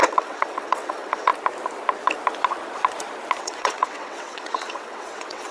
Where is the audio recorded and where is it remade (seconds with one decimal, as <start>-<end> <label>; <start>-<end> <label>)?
0.0-1.3 remade; 1.3-3.4 recorded; 3.4-5.5 remade